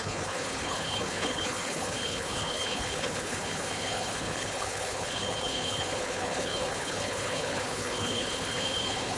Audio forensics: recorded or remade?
remade